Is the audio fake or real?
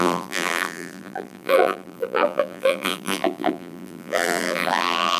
fake